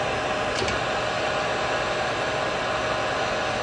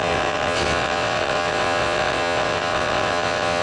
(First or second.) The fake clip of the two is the second